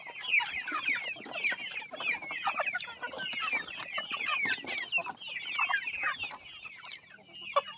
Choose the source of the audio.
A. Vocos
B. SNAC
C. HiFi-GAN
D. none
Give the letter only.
D